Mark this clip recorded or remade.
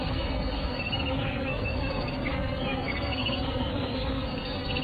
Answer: remade